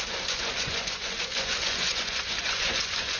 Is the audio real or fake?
fake